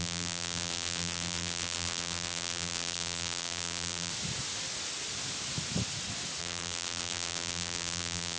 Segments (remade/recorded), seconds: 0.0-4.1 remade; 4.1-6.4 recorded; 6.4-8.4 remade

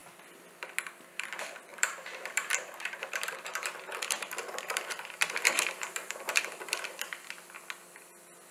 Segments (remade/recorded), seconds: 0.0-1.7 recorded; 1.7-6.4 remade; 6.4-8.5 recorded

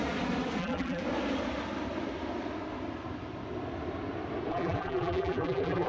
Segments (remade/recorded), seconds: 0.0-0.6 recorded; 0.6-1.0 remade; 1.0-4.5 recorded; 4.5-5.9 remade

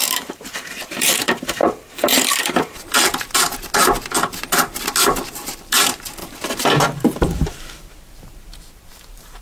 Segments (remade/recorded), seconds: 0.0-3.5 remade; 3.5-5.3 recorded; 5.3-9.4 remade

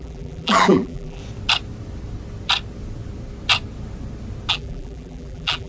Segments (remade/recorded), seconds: 0.0-1.2 remade; 1.2-4.5 recorded; 4.5-5.7 remade

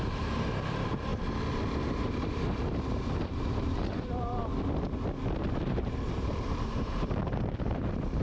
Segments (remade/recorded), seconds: 0.0-1.1 remade; 1.1-2.0 recorded; 2.0-4.4 remade; 4.4-5.4 recorded; 5.4-8.2 remade

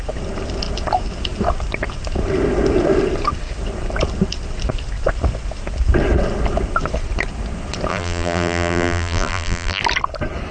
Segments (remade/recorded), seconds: 0.0-7.9 recorded; 7.9-9.8 remade; 9.8-10.5 recorded